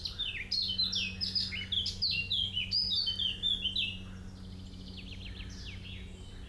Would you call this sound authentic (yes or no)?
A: yes